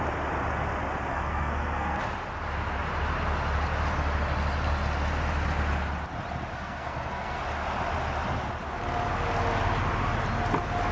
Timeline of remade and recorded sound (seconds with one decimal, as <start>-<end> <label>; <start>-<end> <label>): 0.0-1.1 recorded; 1.1-2.0 remade; 2.0-6.5 recorded; 6.5-7.4 remade; 7.4-10.9 recorded